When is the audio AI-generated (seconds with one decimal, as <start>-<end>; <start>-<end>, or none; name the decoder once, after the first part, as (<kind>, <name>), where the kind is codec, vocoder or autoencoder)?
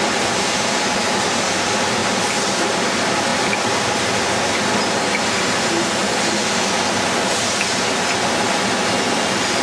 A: none